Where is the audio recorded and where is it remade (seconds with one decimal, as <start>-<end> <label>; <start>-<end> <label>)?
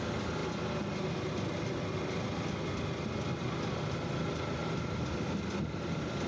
0.0-6.3 recorded